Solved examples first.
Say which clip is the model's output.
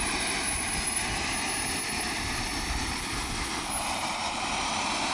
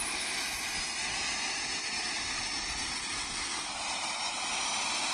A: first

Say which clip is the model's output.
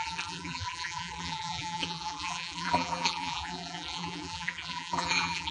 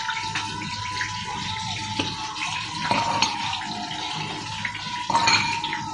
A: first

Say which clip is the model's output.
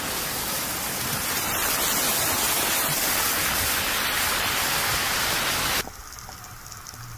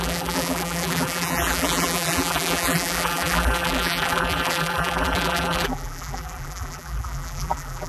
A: second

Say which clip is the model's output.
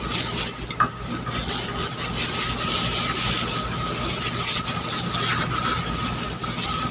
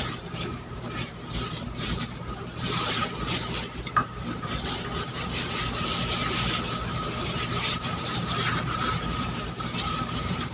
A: second